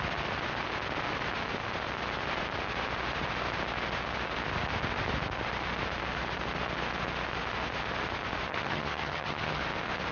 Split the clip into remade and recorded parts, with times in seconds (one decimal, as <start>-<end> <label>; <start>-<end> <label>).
0.0-8.5 recorded; 8.5-9.6 remade; 9.6-10.1 recorded